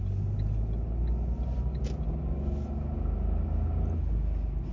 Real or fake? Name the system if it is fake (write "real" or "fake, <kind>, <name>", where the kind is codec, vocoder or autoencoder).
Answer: real